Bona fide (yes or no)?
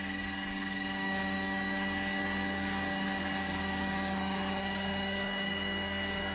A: no